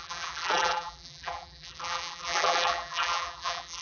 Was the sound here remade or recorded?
remade